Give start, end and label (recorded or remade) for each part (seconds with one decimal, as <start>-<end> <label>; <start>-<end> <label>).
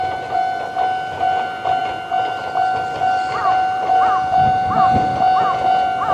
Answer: 0.0-6.1 recorded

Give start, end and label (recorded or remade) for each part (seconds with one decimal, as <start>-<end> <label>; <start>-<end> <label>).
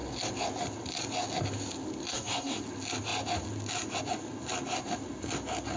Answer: 0.0-2.1 recorded; 2.1-2.6 remade; 2.6-5.8 recorded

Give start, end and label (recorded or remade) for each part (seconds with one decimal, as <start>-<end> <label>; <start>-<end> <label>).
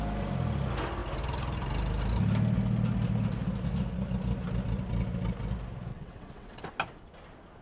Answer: 0.0-5.9 recorded; 5.9-6.6 remade; 6.6-7.6 recorded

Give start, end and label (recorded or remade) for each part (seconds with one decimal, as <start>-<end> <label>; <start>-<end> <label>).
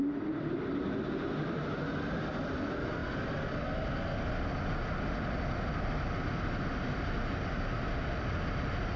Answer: 0.0-9.0 recorded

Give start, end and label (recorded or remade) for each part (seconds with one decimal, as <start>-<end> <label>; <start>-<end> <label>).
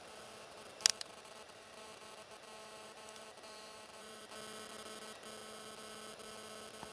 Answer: 0.0-0.9 recorded; 0.9-4.3 remade; 4.3-6.9 recorded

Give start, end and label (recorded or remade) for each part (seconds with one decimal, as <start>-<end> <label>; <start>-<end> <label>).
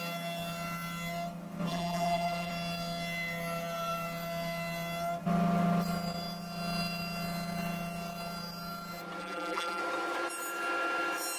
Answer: 0.0-1.7 recorded; 1.7-2.5 remade; 2.5-9.2 recorded; 9.2-9.8 remade; 9.8-11.4 recorded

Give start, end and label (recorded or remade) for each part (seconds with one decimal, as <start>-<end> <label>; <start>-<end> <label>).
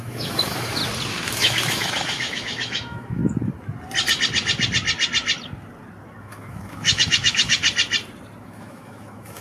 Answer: 0.0-0.8 remade; 0.8-1.3 recorded; 1.3-3.2 remade; 3.2-6.2 recorded; 6.2-7.6 remade; 7.6-8.4 recorded; 8.4-9.4 remade